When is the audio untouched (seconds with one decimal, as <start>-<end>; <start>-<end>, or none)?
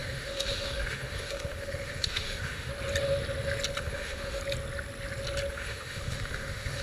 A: 2.7-3.8; 4.4-5.5